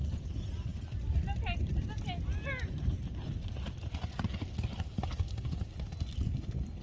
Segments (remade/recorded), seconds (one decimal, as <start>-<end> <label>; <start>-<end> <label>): 0.0-6.8 recorded